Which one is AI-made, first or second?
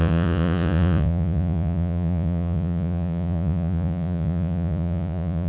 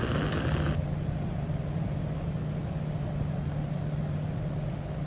first